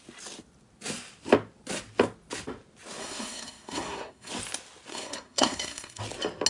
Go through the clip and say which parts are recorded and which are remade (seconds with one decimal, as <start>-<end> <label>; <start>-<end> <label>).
0.0-3.0 recorded; 3.0-4.3 remade; 4.3-4.9 recorded; 4.9-6.0 remade; 6.0-6.5 recorded